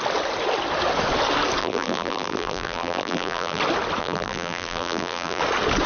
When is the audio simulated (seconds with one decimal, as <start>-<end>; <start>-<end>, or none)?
1.6-3.6; 4.0-5.4